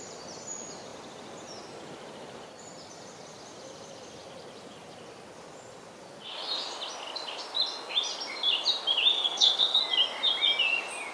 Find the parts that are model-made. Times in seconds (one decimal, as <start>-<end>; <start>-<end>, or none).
9.1-9.8